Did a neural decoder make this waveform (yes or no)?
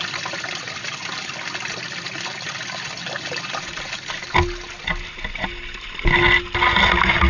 no